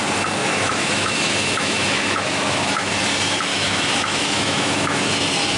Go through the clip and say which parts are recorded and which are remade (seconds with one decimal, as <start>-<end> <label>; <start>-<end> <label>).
0.0-0.4 recorded; 0.4-2.9 remade; 2.9-3.5 recorded; 3.5-5.0 remade; 5.0-5.6 recorded